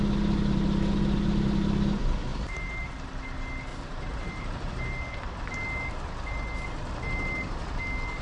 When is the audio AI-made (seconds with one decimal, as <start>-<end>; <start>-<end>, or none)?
2.3-2.9; 3.7-5.0